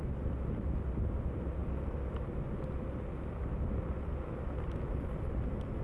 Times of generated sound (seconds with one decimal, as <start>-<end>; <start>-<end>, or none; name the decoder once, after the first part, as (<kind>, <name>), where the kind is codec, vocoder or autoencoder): none